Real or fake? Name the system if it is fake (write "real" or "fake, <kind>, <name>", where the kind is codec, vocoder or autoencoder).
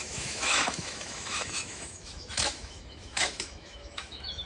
fake, autoencoder, DAC-VAE